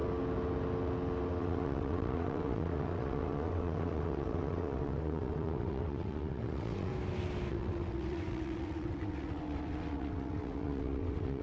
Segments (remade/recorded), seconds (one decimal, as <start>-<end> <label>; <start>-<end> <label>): 0.0-1.4 recorded; 1.4-6.9 remade; 6.9-7.5 recorded; 7.5-11.4 remade